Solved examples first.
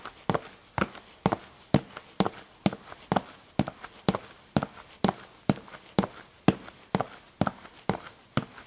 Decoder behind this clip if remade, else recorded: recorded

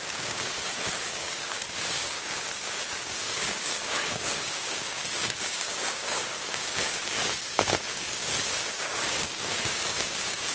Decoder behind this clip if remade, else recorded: remade, codec, DAC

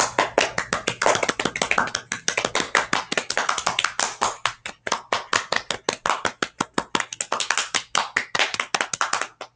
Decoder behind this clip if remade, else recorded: recorded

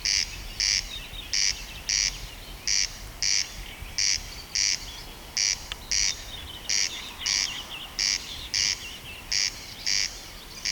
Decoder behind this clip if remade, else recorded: recorded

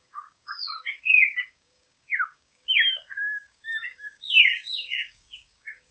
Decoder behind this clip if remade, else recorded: remade, codec, DAC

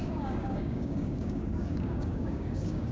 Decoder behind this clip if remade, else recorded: remade, codec, DAC